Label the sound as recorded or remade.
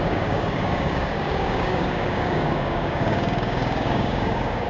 remade